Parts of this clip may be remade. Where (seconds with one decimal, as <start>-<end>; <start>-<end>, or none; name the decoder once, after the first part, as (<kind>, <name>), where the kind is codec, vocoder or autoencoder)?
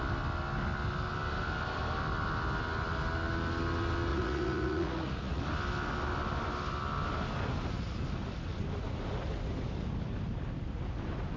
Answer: 4.1-5.4 (vocoder, Vocos)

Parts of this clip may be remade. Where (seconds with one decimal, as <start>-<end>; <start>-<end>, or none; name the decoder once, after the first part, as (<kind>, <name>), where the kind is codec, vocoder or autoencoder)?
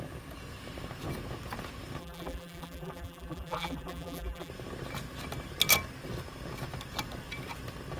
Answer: 2.0-4.5 (vocoder, BigVGAN v2)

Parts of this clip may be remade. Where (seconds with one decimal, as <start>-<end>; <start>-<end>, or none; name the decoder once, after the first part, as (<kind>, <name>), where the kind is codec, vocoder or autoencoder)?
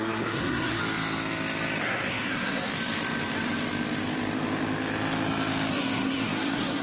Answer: 0.0-0.8 (codec, SNAC); 1.8-2.7; 5.7-6.8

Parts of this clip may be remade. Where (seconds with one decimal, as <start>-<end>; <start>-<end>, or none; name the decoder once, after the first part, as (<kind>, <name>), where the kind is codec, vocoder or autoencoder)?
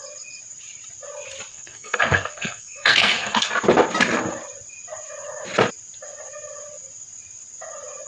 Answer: 1.5-3.5 (codec, SNAC)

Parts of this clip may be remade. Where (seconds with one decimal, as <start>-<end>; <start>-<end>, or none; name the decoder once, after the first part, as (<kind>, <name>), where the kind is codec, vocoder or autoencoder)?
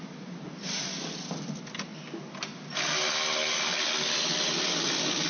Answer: none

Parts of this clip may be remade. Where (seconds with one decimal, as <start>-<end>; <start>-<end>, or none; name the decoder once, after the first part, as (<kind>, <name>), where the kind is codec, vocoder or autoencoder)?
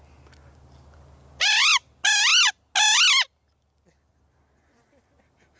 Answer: none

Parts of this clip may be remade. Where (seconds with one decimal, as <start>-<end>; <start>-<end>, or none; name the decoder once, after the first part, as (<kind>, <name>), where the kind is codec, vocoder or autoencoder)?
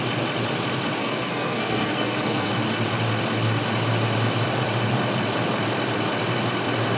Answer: 1.0-2.5 (codec, SNAC)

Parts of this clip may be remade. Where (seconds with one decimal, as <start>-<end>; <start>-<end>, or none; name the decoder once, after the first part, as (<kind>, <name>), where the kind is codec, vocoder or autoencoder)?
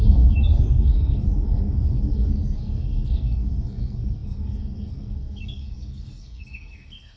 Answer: 0.0-7.2 (codec, SNAC)